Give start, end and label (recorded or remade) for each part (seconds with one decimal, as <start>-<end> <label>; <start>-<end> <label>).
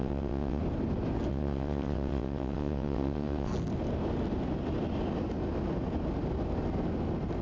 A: 0.0-0.6 remade; 0.6-1.3 recorded; 1.3-3.5 remade; 3.5-7.4 recorded